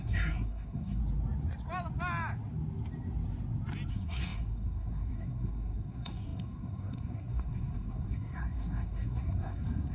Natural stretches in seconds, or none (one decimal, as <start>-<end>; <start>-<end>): 1.0-3.9